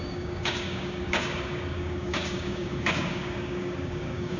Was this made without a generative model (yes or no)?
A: no